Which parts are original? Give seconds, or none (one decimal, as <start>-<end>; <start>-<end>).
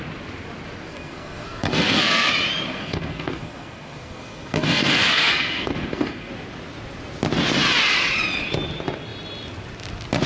0.0-0.9; 2.3-2.7; 6.3-10.3